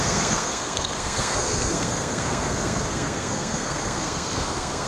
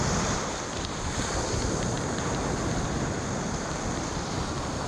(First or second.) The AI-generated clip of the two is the first